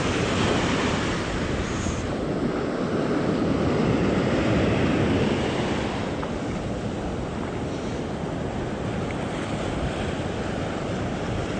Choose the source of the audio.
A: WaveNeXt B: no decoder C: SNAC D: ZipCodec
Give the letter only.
B